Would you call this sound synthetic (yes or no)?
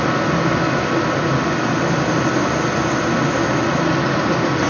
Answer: no